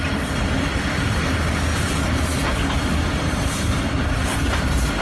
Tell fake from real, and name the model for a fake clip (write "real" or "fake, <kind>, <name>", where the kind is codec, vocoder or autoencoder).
real